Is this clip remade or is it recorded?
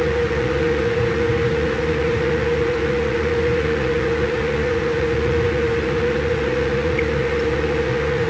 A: remade